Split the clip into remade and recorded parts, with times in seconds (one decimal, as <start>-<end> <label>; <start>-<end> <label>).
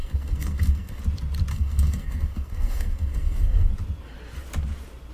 0.0-1.0 remade; 1.0-1.5 recorded; 1.5-3.7 remade; 3.7-5.1 recorded